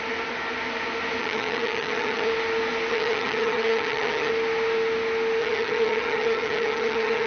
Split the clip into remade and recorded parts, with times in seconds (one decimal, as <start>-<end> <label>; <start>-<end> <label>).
0.0-1.2 recorded; 1.2-2.3 remade; 2.3-2.9 recorded; 2.9-4.3 remade; 4.3-5.4 recorded; 5.4-7.3 remade